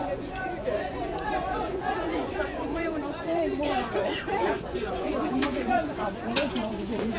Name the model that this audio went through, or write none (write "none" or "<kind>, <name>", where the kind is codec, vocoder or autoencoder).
vocoder, Vocos